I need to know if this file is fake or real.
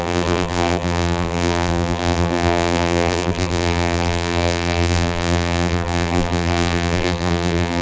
fake